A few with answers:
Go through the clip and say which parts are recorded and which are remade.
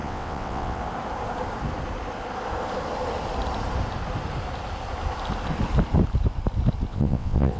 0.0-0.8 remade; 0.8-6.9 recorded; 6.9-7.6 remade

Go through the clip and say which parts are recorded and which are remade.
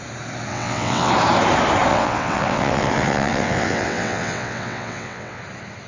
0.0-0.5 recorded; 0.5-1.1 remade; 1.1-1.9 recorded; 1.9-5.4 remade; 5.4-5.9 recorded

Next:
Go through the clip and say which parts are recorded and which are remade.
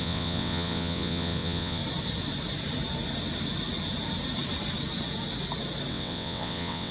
0.0-1.8 remade; 1.8-5.9 recorded; 5.9-6.9 remade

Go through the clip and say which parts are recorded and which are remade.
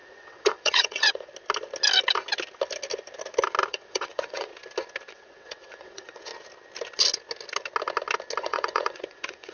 0.0-1.3 remade; 1.3-3.7 recorded; 3.7-4.5 remade; 4.5-5.1 recorded; 5.1-6.3 remade; 6.3-8.4 recorded; 8.4-9.5 remade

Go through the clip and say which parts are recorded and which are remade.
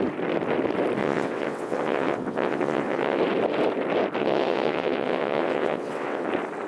0.0-1.0 recorded; 1.0-3.2 remade; 3.2-4.2 recorded; 4.2-6.3 remade; 6.3-6.7 recorded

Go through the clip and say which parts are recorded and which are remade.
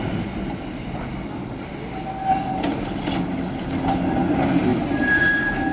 0.0-5.7 recorded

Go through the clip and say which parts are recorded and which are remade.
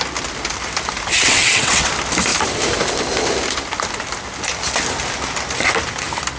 0.0-1.1 recorded; 1.1-1.9 remade; 1.9-6.4 recorded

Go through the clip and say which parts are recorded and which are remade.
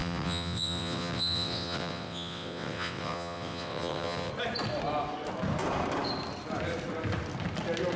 0.0-4.3 remade; 4.3-8.0 recorded